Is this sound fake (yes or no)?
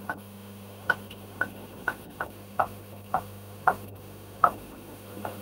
yes